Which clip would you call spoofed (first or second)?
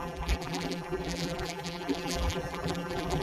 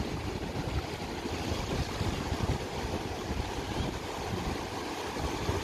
first